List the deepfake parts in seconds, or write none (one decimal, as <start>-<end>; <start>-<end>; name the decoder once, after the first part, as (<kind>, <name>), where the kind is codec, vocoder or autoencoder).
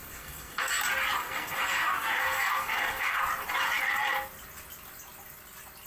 0.0-0.7 (codec, SNAC); 1.2-3.2